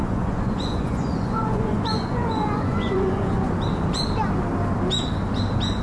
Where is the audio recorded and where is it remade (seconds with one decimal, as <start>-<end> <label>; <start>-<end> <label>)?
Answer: 0.0-3.5 remade; 3.5-5.8 recorded